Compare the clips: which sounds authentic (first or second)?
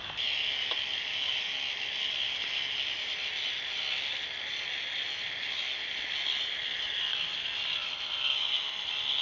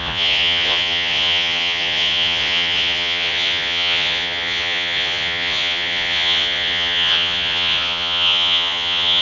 first